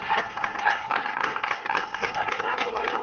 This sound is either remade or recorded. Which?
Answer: remade